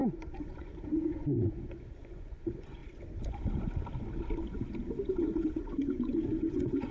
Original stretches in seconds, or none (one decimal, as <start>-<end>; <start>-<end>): 2.8-5.2